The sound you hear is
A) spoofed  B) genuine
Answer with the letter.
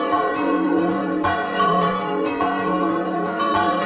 A